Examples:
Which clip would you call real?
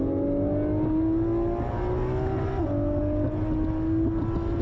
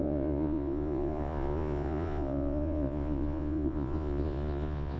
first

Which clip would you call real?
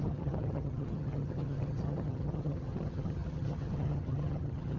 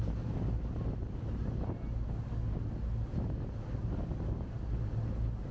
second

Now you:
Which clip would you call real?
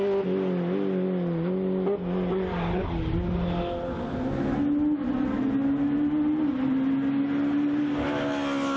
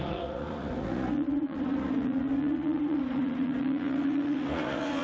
first